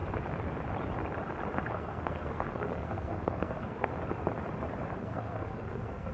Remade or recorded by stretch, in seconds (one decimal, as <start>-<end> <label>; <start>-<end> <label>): 0.0-1.7 recorded; 1.7-3.9 remade; 3.9-5.0 recorded; 5.0-6.1 remade